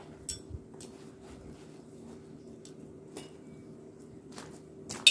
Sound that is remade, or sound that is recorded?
recorded